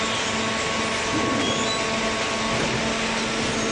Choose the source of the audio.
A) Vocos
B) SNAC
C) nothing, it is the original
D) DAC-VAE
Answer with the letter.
C